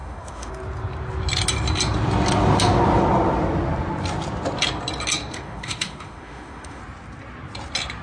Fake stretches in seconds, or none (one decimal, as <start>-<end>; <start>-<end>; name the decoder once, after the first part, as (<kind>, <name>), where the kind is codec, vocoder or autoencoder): 0.0-0.5 (autoencoder, DAC-VAE); 5.3-6.8